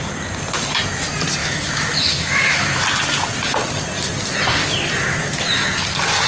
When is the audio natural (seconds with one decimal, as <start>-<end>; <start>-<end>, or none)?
0.0-1.4; 2.8-5.2; 5.7-6.3